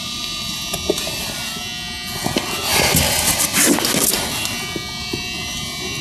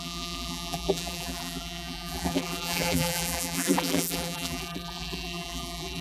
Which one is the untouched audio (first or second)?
first